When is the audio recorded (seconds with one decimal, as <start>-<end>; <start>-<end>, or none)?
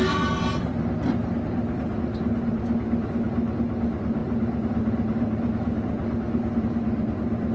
0.0-7.5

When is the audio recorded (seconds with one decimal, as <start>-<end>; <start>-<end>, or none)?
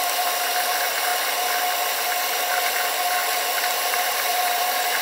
0.0-5.0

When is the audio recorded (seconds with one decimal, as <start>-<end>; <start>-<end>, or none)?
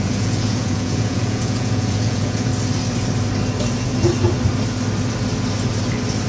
2.5-6.3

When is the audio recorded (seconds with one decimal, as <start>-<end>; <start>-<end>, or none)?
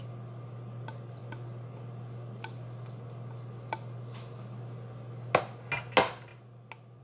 0.0-7.0